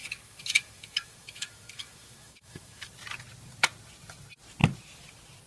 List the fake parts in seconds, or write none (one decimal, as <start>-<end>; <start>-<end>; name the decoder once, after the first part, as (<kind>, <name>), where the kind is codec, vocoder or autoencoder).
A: 0.0-2.9 (autoencoder, DAC-VAE)